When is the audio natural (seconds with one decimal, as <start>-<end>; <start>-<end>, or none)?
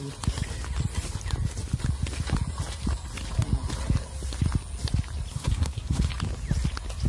0.0-5.3; 6.1-7.1